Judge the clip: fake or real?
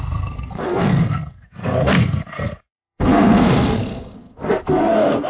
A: fake